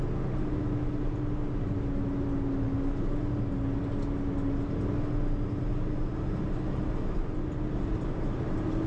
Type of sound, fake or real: real